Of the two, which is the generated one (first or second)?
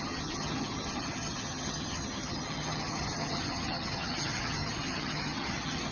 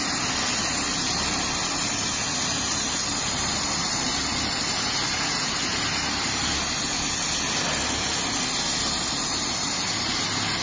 first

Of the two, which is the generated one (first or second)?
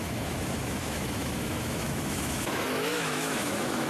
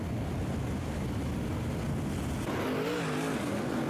first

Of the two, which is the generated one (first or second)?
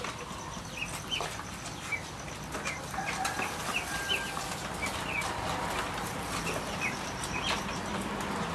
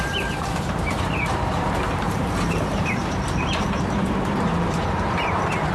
second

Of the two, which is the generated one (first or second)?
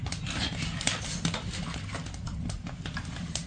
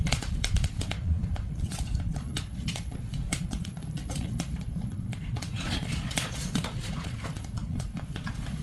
second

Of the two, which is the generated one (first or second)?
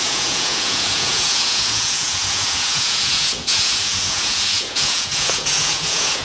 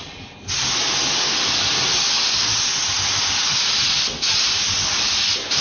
first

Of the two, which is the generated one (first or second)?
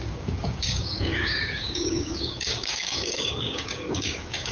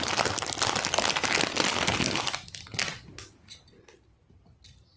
first